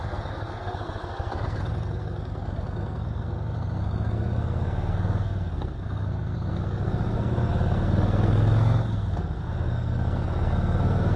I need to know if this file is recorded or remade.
remade